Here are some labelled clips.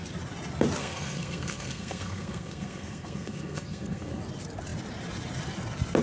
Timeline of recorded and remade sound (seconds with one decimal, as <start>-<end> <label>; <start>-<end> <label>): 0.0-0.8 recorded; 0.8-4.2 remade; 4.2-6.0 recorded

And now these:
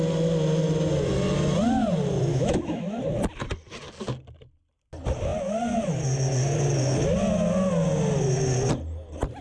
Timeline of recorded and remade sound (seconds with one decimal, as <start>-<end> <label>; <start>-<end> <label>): 0.0-2.3 recorded; 2.3-3.0 remade; 3.0-9.4 recorded

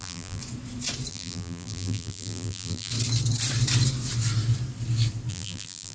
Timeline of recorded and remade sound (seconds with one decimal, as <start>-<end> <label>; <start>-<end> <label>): 0.0-0.4 remade; 0.4-1.1 recorded; 1.1-2.9 remade; 2.9-5.3 recorded; 5.3-5.9 remade